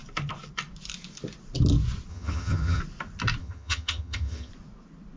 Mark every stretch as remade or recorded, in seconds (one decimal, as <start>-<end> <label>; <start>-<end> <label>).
0.0-2.1 recorded; 2.1-2.8 remade; 2.8-3.4 recorded; 3.4-4.5 remade; 4.5-5.2 recorded